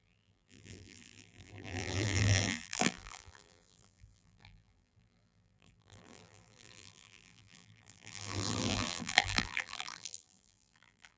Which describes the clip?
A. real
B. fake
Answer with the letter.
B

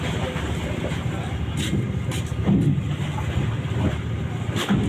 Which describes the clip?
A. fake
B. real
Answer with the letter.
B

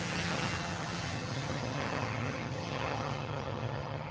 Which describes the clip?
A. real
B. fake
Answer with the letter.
B